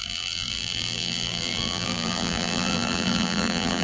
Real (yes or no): no